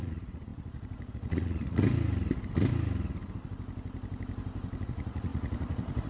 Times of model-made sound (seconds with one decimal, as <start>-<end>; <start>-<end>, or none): 0.0-1.8; 4.8-6.1